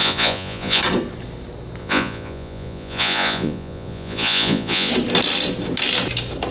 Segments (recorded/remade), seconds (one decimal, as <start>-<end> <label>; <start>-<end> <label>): 0.0-0.8 remade; 0.8-1.8 recorded; 1.8-4.9 remade; 4.9-6.5 recorded